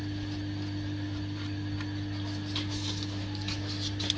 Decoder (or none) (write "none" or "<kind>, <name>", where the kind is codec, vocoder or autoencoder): none